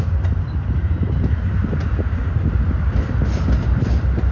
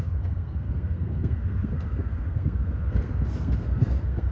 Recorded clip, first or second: first